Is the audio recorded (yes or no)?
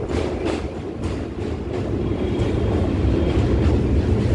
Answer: yes